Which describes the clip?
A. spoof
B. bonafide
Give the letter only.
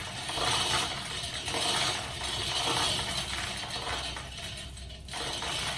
B